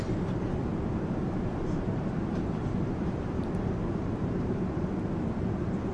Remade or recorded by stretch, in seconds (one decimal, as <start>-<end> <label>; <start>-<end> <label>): 0.0-0.7 recorded; 0.7-4.2 remade; 4.2-5.9 recorded

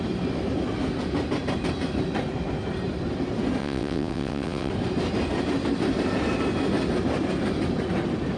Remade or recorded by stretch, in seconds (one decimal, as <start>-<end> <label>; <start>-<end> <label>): 0.0-3.6 recorded; 3.6-4.7 remade; 4.7-8.4 recorded

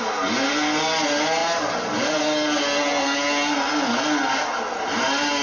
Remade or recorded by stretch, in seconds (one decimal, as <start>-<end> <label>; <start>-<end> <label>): 0.0-5.4 recorded

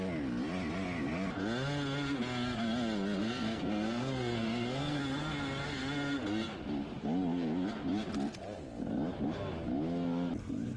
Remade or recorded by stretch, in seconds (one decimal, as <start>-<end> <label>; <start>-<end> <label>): 0.0-3.2 recorded; 3.2-5.0 remade; 5.0-10.8 recorded

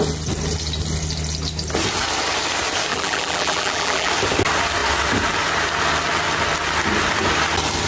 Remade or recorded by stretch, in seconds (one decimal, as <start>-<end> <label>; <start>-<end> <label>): 0.0-2.9 recorded; 2.9-4.1 remade; 4.1-7.9 recorded